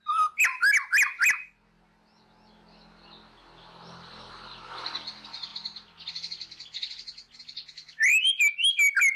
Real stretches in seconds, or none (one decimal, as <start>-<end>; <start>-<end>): 0.0-9.2